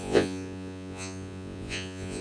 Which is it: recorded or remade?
remade